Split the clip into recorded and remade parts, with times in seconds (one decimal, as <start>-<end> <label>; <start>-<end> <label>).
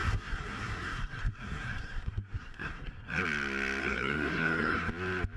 0.0-3.2 remade; 3.2-3.8 recorded; 3.8-4.9 remade; 4.9-5.4 recorded